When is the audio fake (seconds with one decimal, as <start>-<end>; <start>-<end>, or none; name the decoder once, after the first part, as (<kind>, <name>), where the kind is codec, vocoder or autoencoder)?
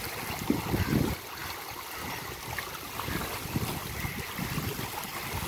none